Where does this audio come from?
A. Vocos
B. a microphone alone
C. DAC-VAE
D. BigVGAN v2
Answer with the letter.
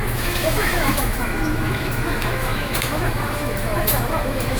C